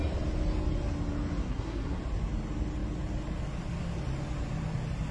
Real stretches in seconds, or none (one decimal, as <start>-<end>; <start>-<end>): 0.0-1.4; 2.0-5.1